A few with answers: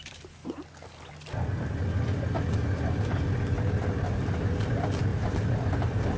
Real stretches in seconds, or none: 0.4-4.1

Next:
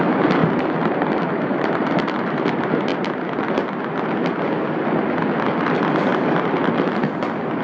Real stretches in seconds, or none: 0.0-0.4; 2.4-7.6

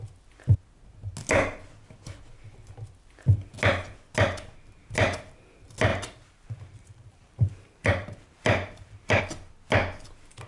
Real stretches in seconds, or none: 0.0-5.9; 9.2-10.5

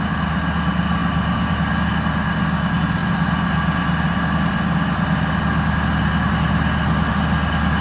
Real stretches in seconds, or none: 0.0-7.8

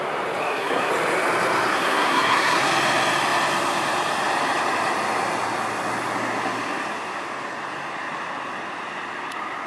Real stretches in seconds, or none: 0.0-0.4; 0.9-1.7; 2.7-9.7

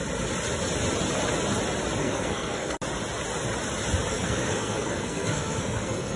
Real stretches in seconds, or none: 0.0-2.0; 2.8-4.1